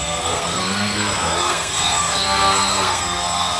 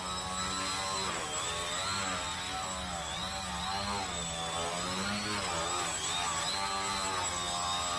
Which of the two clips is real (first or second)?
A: second